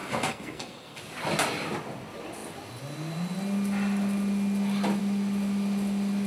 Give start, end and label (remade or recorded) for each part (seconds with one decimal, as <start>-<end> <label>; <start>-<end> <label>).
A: 0.0-1.0 remade; 1.0-6.3 recorded